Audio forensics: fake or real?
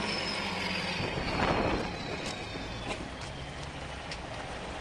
real